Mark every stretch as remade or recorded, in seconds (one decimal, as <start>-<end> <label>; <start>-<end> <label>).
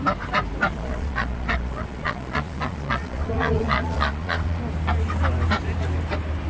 0.0-0.7 recorded; 0.7-4.6 remade; 4.6-6.5 recorded